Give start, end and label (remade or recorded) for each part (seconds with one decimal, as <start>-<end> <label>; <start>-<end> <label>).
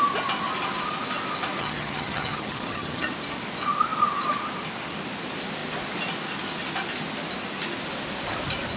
0.0-1.6 recorded; 1.6-3.1 remade; 3.1-8.8 recorded